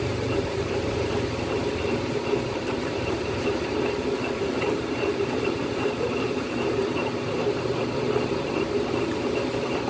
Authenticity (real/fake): fake